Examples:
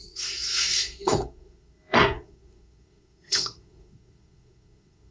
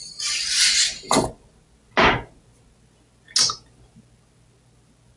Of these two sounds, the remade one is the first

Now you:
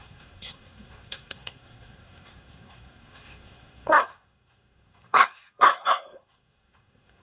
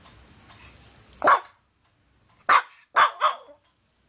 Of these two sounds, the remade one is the first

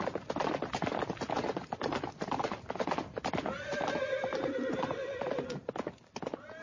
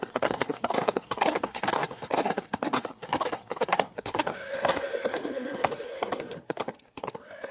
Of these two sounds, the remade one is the second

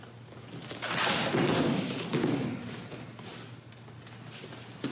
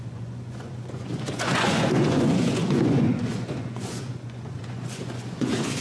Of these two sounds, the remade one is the second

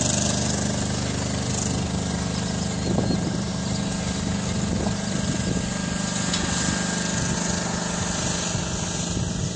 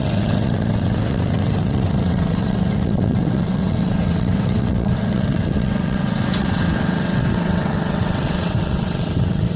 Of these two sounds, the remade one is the second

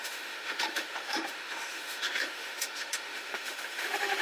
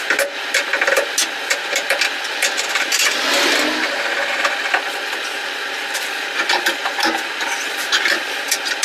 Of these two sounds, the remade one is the first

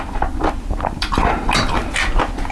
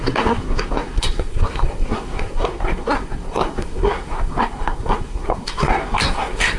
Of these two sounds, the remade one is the second